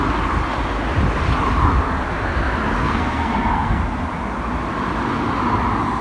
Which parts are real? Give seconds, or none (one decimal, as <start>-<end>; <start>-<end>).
0.0-2.8; 3.9-6.0